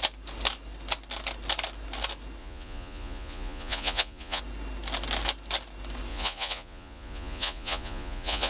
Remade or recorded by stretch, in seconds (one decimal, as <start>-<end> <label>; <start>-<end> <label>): 0.0-2.4 recorded; 2.4-4.4 remade; 4.4-6.1 recorded; 6.1-8.5 remade